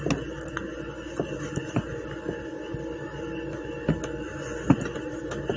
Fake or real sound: real